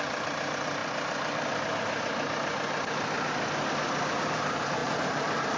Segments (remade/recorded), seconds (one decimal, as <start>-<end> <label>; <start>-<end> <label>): 0.0-0.8 remade; 0.8-4.2 recorded; 4.2-5.6 remade